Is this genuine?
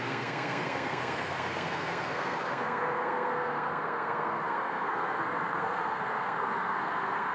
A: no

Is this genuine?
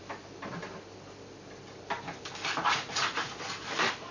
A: yes